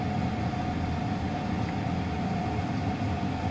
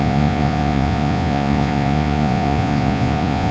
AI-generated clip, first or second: second